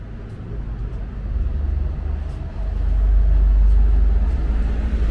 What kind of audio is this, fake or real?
real